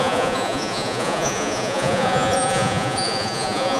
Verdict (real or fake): fake